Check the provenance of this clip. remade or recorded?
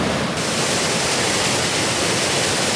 recorded